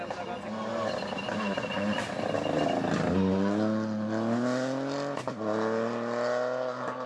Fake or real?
real